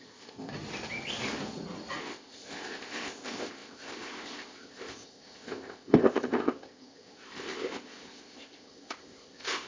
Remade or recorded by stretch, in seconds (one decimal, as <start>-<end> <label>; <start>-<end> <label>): 0.0-0.5 remade; 0.5-2.0 recorded; 2.0-9.7 remade

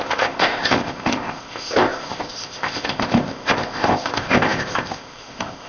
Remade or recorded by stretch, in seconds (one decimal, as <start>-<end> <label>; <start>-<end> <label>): 0.0-5.7 remade

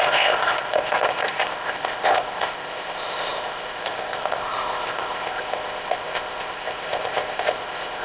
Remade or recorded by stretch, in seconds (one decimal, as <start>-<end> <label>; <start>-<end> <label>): 0.0-8.0 remade

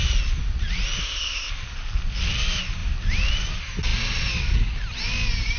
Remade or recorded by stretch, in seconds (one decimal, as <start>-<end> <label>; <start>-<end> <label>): 0.0-1.0 recorded; 1.0-1.5 remade; 1.5-5.6 recorded

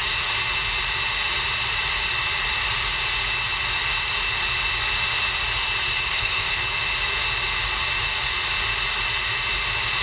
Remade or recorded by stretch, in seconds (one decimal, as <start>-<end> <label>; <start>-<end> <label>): 0.0-6.1 recorded; 6.1-6.6 remade; 6.6-10.0 recorded

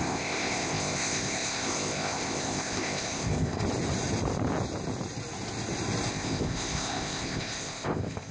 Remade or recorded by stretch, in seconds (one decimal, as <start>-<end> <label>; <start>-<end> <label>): 0.0-3.6 remade; 3.6-6.1 recorded; 6.1-8.3 remade

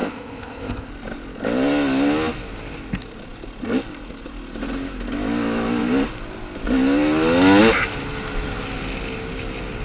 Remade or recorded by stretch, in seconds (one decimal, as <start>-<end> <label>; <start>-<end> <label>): 0.0-0.9 remade; 0.9-9.8 recorded

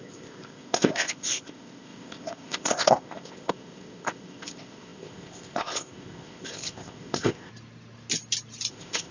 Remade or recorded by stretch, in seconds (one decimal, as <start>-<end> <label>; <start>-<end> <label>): 0.0-7.5 remade; 7.5-8.7 recorded; 8.7-9.1 remade